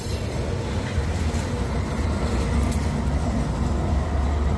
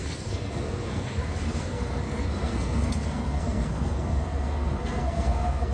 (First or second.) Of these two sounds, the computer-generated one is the second